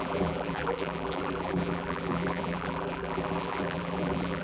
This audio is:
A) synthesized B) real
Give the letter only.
A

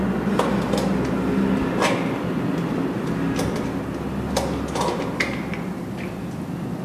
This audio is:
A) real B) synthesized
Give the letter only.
A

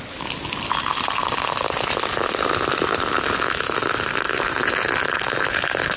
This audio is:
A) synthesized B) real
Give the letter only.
B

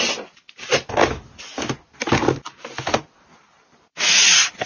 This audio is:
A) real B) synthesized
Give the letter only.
A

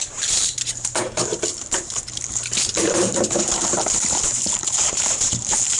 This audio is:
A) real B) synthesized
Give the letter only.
B